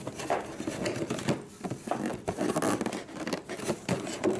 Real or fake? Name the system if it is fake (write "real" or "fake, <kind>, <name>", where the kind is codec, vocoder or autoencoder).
real